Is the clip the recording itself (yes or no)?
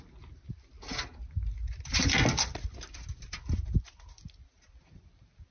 yes